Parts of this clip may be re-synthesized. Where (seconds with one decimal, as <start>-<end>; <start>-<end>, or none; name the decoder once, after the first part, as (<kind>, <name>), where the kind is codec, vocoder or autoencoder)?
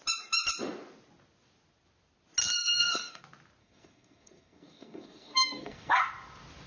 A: 2.4-3.2 (codec, SNAC); 3.6-6.0